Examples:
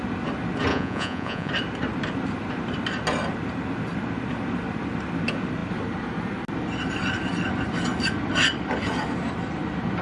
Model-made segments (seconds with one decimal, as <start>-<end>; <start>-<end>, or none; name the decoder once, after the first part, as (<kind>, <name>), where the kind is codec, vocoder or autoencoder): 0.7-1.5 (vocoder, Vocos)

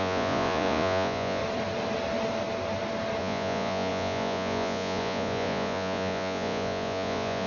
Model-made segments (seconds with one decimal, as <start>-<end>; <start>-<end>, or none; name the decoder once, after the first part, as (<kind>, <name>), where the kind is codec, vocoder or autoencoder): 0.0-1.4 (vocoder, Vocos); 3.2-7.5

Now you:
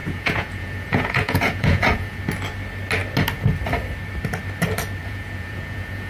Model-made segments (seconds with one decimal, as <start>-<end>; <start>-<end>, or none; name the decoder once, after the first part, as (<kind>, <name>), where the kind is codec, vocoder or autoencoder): 0.0-2.2 (vocoder, Vocos); 5.0-6.1